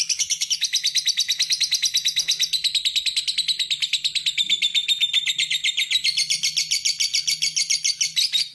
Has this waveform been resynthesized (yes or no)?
no